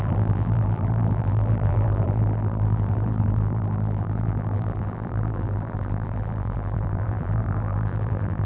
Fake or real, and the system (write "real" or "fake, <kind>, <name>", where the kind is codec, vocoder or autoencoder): fake, vocoder, BigVGAN v2